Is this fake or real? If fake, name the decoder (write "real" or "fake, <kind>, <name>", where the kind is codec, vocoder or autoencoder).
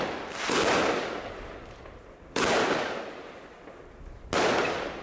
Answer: real